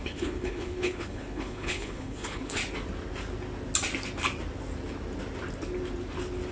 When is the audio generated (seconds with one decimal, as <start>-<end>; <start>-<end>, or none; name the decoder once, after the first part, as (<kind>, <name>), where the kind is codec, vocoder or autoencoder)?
0.0-2.6 (codec, HILCodec)